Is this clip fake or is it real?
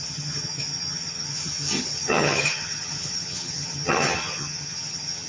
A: fake